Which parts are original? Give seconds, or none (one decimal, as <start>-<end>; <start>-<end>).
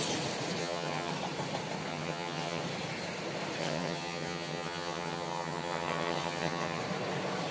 0.0-0.6; 1.1-1.9; 2.6-3.6; 6.8-7.5